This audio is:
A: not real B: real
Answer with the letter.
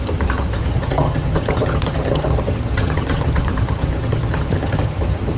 A